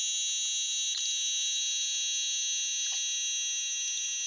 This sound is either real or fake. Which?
real